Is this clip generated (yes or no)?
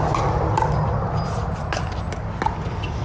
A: no